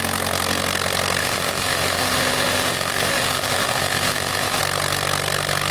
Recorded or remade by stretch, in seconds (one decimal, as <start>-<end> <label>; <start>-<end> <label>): 0.0-1.2 recorded; 1.2-4.6 remade; 4.6-5.7 recorded